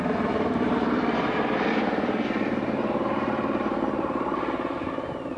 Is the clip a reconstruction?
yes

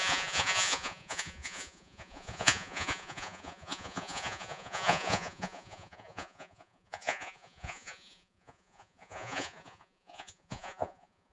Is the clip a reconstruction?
yes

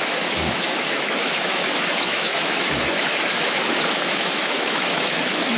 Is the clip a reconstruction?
yes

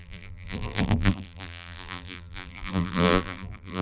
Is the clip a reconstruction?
yes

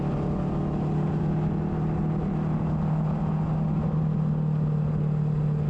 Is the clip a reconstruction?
no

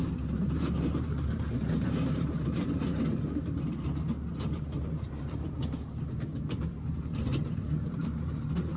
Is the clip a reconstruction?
yes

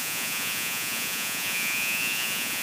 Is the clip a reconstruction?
yes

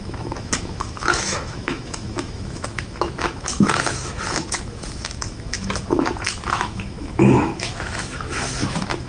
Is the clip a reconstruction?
yes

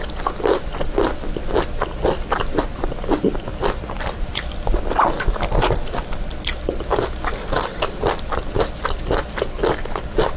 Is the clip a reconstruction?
no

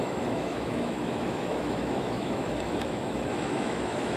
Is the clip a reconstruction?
yes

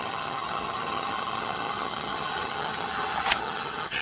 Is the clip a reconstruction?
yes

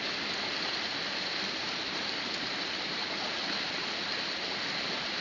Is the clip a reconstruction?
no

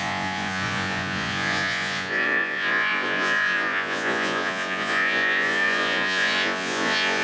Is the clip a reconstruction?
yes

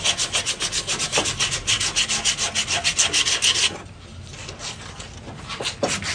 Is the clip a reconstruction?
no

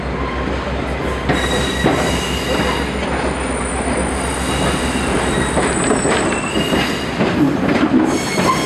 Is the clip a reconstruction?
no